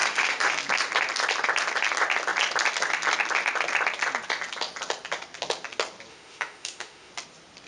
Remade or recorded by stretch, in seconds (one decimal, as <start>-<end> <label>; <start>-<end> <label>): 0.0-0.5 remade; 0.5-6.1 recorded; 6.1-7.1 remade; 7.1-7.7 recorded